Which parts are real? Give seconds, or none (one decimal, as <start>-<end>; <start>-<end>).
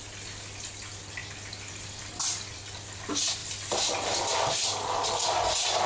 0.0-5.9